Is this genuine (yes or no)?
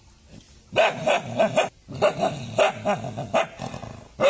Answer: yes